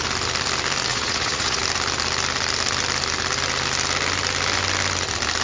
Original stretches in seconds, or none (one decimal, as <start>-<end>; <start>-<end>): 0.0-0.9; 1.6-5.4